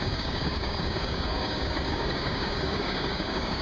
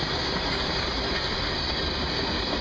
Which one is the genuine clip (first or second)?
second